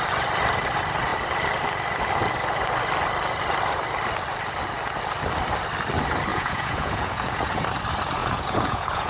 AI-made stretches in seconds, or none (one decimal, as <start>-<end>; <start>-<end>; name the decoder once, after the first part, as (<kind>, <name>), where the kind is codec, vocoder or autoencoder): 6.3-7.6 (vocoder, Vocos); 8.2-9.1